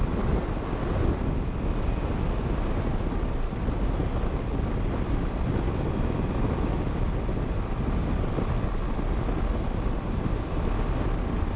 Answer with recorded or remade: recorded